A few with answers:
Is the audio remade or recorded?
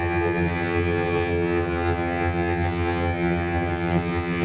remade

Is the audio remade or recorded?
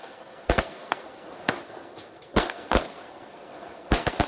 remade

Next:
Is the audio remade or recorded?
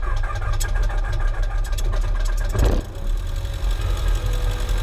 recorded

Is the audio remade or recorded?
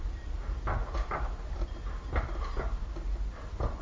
recorded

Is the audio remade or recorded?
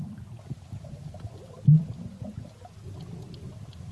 recorded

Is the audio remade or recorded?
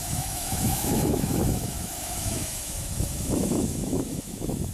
remade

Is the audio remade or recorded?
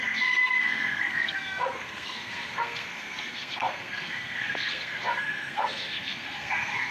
remade